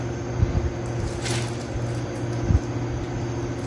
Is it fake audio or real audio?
real